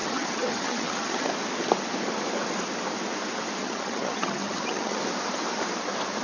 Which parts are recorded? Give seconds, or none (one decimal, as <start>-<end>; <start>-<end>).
1.3-3.6; 5.0-6.2

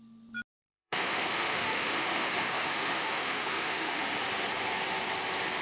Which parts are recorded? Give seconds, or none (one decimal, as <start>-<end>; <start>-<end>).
0.0-0.6; 4.0-5.6